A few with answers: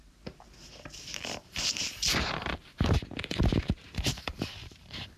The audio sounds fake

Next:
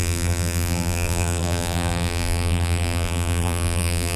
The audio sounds fake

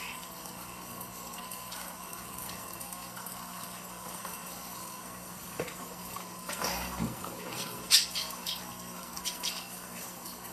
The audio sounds fake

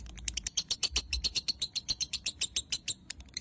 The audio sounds fake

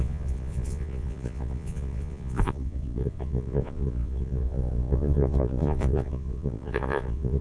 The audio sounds fake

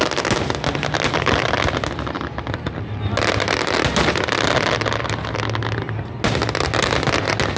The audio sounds real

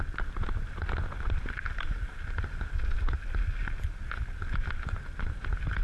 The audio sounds real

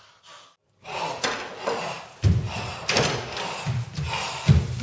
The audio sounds real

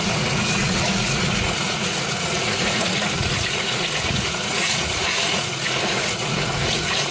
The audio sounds fake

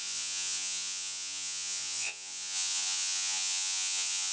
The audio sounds fake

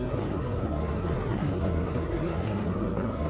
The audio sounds fake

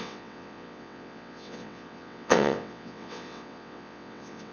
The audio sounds fake